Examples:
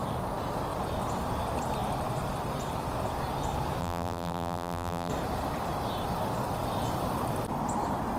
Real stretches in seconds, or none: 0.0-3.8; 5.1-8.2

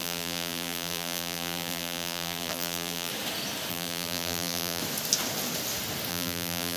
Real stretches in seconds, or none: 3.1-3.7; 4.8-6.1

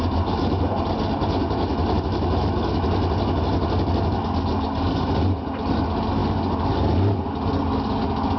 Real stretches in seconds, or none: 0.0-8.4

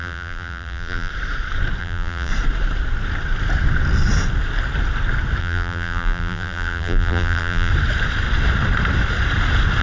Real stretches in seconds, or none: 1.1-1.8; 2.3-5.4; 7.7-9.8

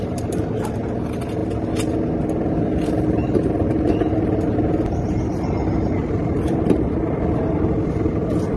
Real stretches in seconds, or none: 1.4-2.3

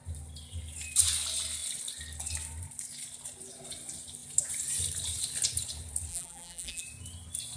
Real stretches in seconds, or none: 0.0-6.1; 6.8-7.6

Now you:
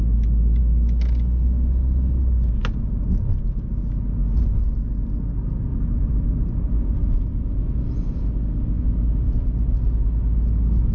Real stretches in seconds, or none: 0.0-5.7; 8.2-10.9

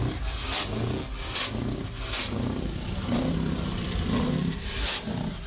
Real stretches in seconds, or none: 0.0-2.2